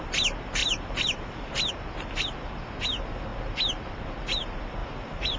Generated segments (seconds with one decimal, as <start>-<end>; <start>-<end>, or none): 0.6-1.7; 4.8-5.4